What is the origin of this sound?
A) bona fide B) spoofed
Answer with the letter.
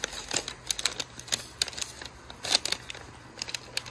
A